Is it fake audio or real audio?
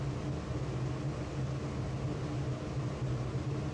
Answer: real